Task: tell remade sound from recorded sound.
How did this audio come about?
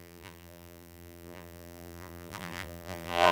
remade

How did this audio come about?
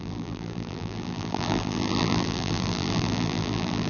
remade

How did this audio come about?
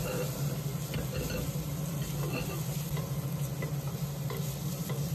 recorded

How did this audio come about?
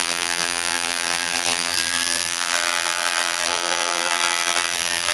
remade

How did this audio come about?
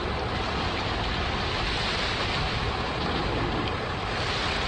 remade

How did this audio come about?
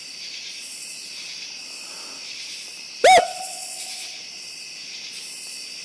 recorded